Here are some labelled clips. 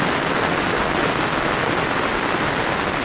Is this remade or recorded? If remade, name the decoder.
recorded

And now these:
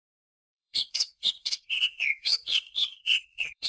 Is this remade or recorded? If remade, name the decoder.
remade, codec, SNAC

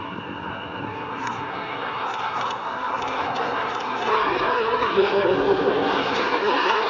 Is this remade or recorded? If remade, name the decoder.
remade, codec, SNAC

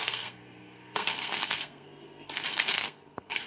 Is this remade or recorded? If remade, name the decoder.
remade, codec, SNAC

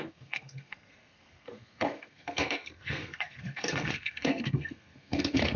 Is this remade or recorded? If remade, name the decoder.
remade, codec, SNAC